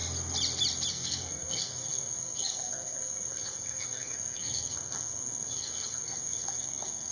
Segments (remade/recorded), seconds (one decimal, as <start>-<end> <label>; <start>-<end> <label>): 0.0-0.9 recorded; 0.9-7.1 remade